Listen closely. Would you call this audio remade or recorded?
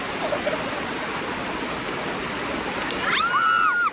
recorded